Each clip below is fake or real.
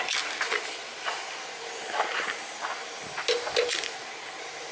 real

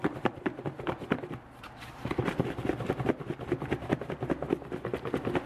real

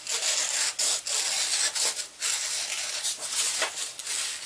real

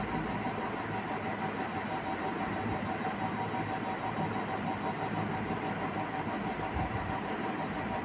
real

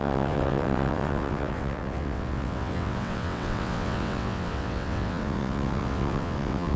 fake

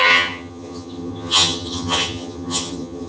fake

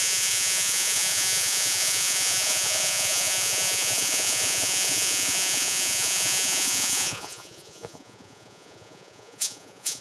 fake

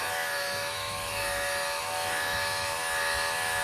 fake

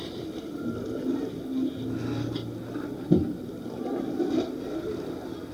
real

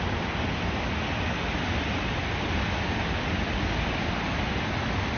real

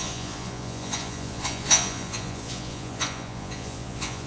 fake